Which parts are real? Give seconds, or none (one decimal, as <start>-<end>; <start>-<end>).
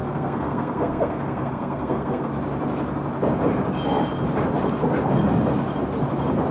2.3-6.5